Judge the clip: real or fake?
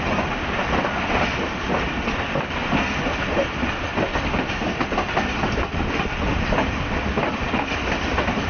fake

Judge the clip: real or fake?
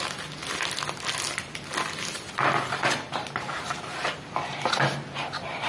real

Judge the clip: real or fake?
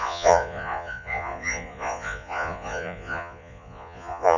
fake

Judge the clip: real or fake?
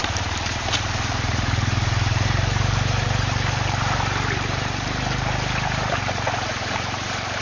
fake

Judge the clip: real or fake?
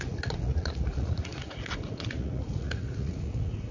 fake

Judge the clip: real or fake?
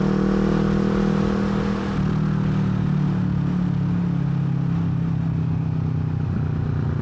real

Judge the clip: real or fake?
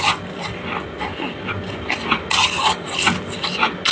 real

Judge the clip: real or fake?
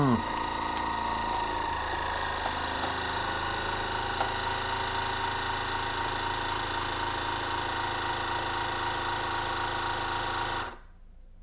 real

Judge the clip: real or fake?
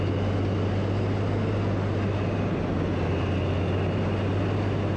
real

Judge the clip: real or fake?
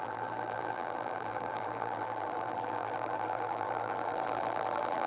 fake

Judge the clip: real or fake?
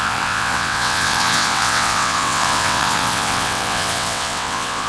fake